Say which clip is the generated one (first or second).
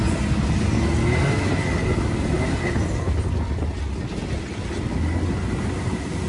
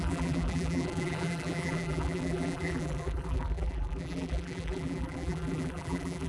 second